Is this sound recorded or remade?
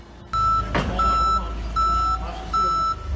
recorded